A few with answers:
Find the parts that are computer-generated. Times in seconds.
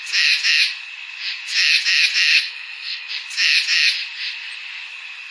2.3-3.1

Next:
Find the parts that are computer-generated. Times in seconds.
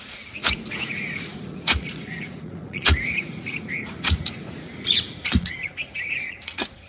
0.0-6.9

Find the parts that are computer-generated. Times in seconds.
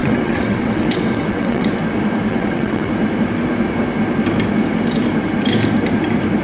0.0-1.7; 2.3-2.9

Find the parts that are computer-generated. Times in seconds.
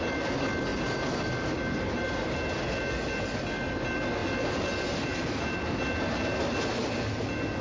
none